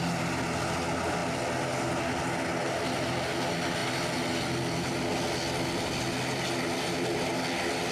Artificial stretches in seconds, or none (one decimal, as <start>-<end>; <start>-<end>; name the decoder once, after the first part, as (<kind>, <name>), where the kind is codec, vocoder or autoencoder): none